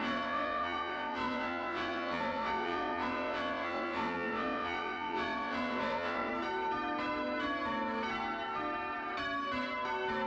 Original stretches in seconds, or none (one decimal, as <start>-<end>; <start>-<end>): 6.3-10.3